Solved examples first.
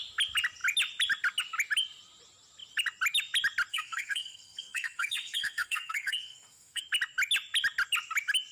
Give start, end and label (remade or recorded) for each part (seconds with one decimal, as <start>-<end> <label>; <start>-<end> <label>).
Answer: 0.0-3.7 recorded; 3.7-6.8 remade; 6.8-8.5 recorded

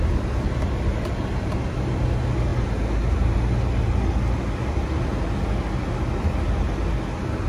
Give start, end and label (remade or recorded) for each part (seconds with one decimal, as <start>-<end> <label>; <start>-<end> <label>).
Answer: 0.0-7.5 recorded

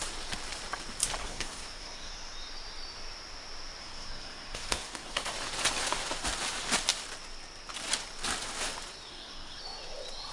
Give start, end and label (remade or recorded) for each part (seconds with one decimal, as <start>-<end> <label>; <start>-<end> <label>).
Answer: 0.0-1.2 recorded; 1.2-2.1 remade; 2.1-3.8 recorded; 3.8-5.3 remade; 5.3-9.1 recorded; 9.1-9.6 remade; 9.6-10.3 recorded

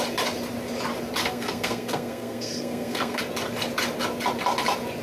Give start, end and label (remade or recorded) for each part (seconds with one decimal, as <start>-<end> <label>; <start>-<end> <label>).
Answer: 0.0-1.2 recorded; 1.2-3.2 remade; 3.2-5.0 recorded

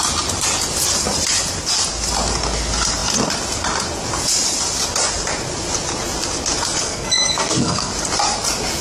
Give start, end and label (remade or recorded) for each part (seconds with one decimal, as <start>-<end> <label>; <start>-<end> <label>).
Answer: 0.0-6.8 recorded; 6.8-7.9 remade; 7.9-8.8 recorded

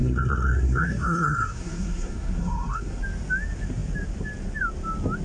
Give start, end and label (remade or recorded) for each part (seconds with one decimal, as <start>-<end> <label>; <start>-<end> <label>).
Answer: 0.0-3.0 remade; 3.0-5.2 recorded